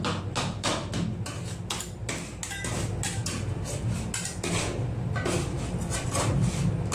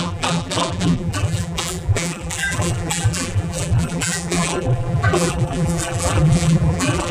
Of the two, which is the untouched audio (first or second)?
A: first